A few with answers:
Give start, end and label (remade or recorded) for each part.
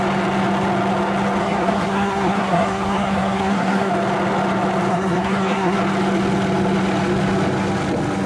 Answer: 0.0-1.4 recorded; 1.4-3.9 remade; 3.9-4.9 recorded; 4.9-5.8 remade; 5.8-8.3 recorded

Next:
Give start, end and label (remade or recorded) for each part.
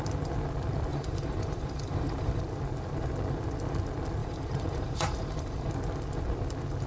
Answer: 0.0-0.9 recorded; 0.9-2.4 remade; 2.4-4.2 recorded; 4.2-5.7 remade; 5.7-6.9 recorded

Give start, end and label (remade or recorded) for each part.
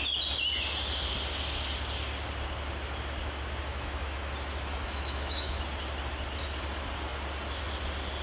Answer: 0.0-3.7 recorded; 3.7-4.3 remade; 4.3-4.7 recorded; 4.7-5.6 remade; 5.6-8.2 recorded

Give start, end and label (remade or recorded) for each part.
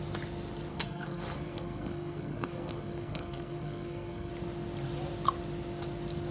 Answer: 0.0-0.7 recorded; 0.7-4.3 remade; 4.3-6.3 recorded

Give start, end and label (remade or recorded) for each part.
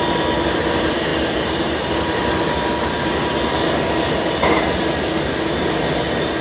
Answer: 0.0-6.4 recorded